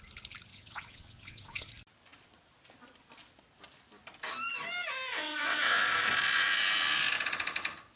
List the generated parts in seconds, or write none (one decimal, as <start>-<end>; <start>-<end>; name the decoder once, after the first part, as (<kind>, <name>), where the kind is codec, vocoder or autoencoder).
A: 0.5-1.7 (vocoder, WaveNeXt); 5.1-5.8